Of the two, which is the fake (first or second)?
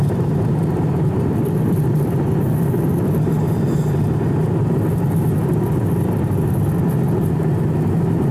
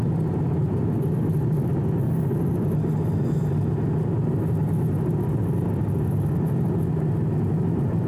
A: first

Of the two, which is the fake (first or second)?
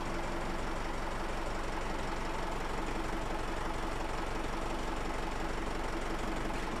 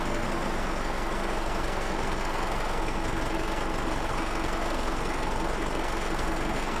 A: second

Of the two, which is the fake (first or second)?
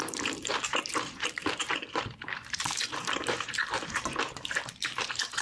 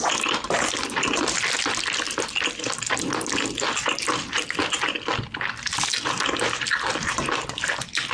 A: first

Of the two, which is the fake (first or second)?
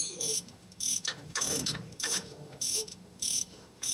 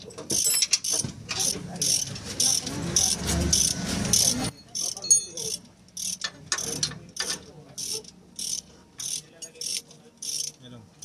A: first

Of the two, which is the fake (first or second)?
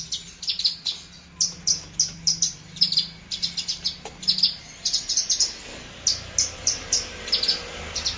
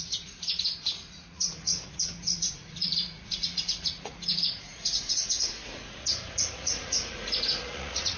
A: second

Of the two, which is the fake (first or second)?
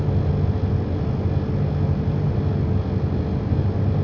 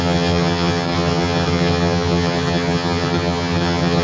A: second